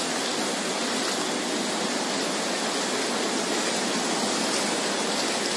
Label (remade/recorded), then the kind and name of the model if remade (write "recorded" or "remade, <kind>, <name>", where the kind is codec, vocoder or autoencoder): recorded